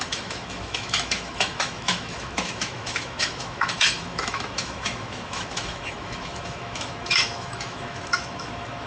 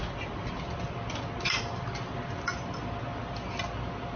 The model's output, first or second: first